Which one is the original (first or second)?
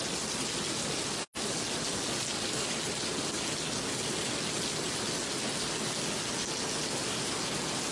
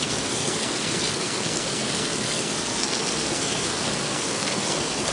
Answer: first